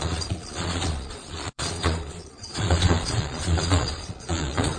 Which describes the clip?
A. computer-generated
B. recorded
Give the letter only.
A